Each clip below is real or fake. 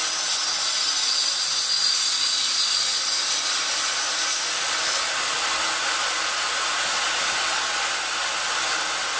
real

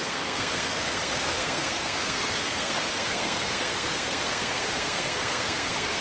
fake